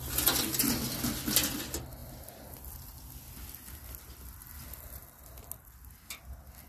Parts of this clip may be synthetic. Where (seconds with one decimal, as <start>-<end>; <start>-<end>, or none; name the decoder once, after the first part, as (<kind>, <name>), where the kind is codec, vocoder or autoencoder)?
none